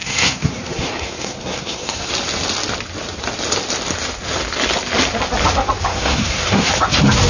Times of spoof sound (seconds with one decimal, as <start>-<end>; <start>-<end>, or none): 0.0-2.1; 5.9-6.7